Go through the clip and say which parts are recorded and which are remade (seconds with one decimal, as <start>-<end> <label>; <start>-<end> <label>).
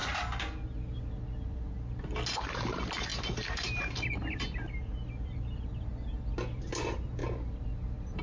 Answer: 0.0-8.2 recorded